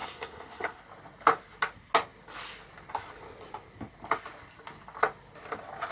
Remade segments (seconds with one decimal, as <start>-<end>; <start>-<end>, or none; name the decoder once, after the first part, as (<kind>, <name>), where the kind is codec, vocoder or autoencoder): 0.0-0.8 (codec, SNAC)